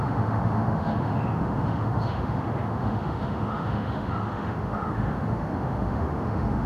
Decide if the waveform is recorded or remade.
remade